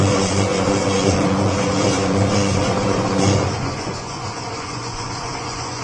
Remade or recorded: remade